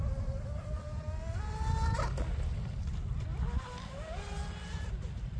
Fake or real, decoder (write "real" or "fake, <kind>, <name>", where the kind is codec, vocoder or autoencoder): real